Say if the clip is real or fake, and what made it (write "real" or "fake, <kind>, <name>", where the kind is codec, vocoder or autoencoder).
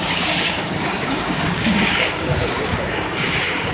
fake, codec, DAC